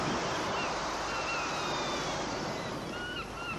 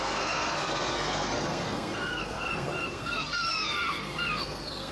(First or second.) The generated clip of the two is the second